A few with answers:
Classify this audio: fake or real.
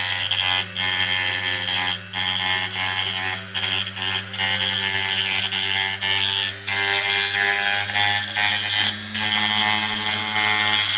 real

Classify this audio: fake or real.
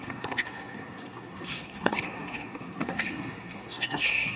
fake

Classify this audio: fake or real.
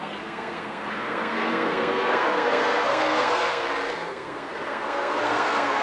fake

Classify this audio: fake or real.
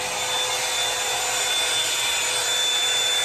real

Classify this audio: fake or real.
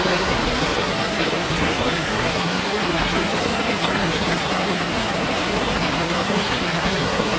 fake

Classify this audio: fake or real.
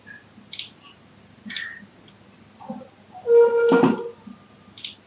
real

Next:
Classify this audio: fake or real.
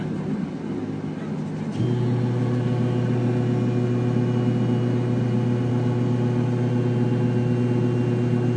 real